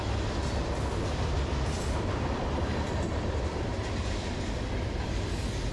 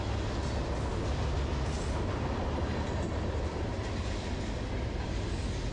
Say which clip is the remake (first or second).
first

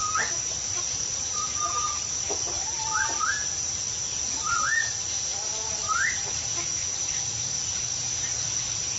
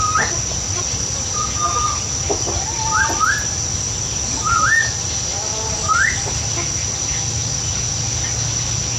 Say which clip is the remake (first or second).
first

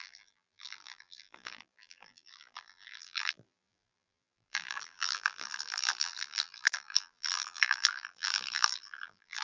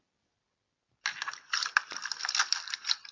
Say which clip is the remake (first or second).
first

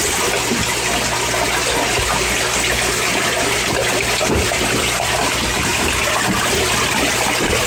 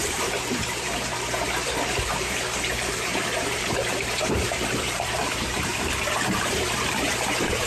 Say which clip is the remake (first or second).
second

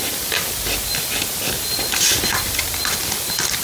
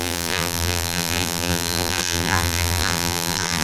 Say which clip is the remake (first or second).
second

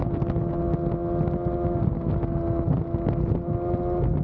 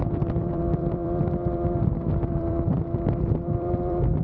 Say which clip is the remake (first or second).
second